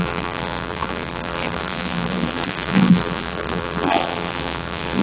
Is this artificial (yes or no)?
yes